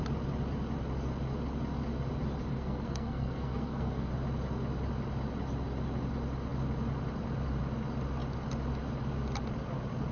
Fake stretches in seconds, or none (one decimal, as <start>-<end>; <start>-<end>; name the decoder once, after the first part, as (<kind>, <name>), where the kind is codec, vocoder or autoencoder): 2.5-4.1 (codec, SNAC)